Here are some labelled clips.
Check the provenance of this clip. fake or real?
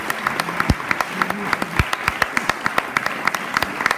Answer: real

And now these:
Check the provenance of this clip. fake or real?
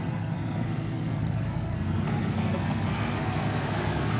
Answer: fake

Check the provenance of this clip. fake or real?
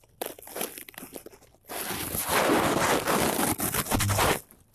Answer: real